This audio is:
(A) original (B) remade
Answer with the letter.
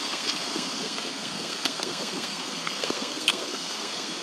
B